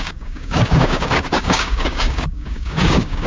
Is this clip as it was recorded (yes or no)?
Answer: no